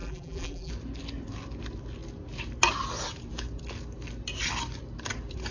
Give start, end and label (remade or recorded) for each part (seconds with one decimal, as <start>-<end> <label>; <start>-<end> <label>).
0.0-0.7 remade; 0.7-5.5 recorded